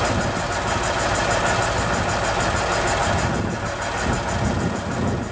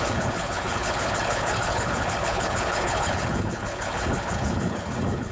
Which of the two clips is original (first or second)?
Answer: first